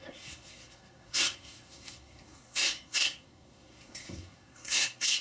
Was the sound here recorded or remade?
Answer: remade